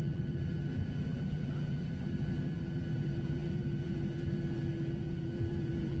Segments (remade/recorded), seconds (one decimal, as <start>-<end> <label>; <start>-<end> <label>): 0.0-6.0 remade